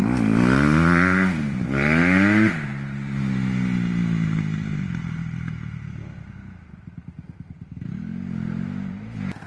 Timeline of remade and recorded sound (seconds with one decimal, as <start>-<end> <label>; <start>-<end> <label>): 0.0-9.5 recorded